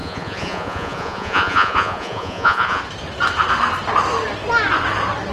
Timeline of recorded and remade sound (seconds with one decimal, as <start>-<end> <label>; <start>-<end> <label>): 0.0-2.8 remade; 2.8-5.3 recorded